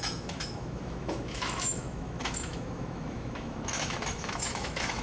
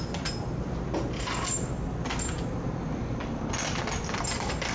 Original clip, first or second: second